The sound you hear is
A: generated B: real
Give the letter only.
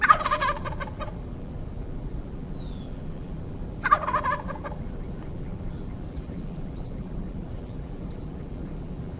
A